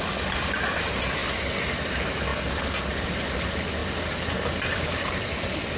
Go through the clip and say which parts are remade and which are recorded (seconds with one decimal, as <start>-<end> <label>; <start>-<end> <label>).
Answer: 0.0-5.8 recorded